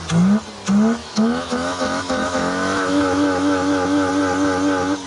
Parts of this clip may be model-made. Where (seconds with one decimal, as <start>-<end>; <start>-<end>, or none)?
1.0-4.1